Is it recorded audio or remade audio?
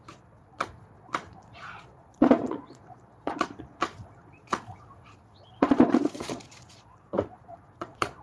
remade